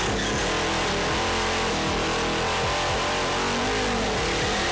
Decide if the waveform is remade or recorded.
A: recorded